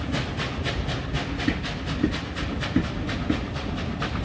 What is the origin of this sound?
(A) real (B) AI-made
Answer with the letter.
A